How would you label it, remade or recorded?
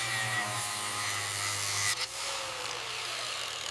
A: recorded